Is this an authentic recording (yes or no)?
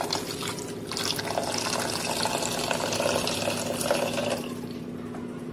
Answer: yes